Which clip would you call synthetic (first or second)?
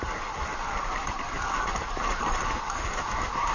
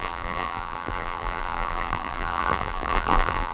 second